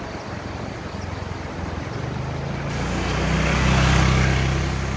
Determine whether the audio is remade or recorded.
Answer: recorded